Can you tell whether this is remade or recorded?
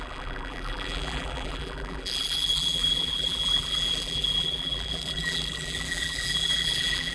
remade